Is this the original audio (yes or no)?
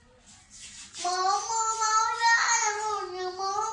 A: yes